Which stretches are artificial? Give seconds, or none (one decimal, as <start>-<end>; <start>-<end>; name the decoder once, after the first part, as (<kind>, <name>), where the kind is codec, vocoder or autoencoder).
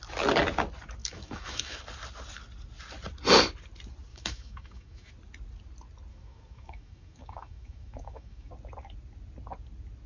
1.0-1.8 (autoencoder, DAC-VAE); 4.1-5.1; 6.1-8.5